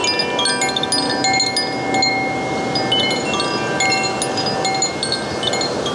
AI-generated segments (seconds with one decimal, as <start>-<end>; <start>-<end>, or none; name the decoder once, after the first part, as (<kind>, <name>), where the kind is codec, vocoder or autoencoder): none